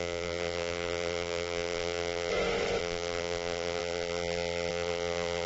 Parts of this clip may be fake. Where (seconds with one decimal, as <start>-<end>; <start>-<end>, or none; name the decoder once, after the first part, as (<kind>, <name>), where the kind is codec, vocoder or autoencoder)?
0.0-2.3 (vocoder, BigVGAN v2); 2.8-5.5